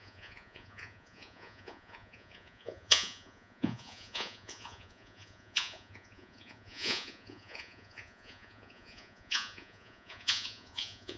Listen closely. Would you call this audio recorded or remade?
remade